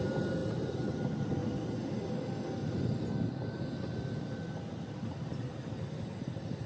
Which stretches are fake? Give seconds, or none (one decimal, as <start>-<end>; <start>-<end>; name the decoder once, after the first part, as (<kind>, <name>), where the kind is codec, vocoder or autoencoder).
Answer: none